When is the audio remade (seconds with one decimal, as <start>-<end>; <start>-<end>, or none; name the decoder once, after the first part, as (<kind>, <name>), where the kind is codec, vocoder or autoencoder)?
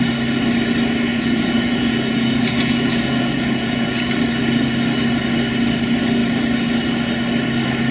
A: 1.1-4.1 (vocoder, Vocos)